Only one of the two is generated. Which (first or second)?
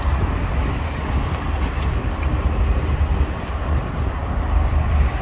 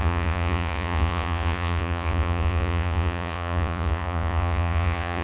second